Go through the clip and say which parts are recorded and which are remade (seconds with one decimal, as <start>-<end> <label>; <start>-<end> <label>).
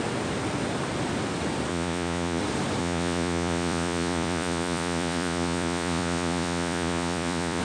0.0-1.7 recorded; 1.7-2.4 remade; 2.4-2.8 recorded; 2.8-7.6 remade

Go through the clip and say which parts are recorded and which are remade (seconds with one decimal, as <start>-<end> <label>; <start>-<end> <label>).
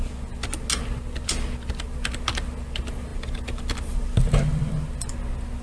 0.0-5.6 recorded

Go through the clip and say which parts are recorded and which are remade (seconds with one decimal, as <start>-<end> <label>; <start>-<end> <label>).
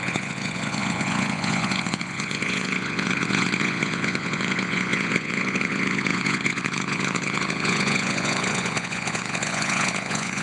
0.0-10.4 remade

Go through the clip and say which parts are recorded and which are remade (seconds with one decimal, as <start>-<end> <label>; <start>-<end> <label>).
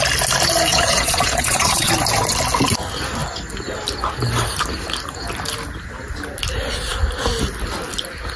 0.0-0.7 recorded; 0.7-1.9 remade; 1.9-8.4 recorded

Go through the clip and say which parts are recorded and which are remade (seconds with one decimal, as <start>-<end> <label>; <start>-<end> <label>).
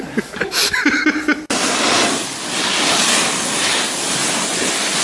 0.0-4.2 recorded; 4.2-5.0 remade